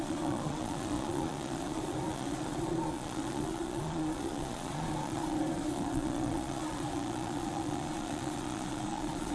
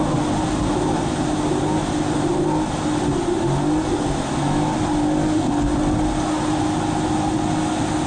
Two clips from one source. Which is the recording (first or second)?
second